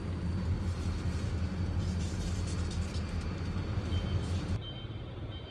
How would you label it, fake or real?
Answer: real